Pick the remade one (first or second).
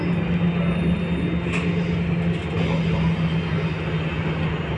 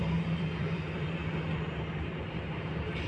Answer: second